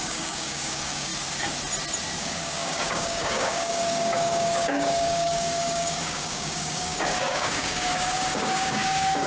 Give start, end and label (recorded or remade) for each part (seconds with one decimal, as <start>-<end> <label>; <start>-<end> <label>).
0.0-1.1 remade; 1.1-2.2 recorded; 2.2-9.3 remade